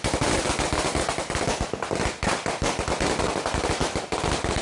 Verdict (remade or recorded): recorded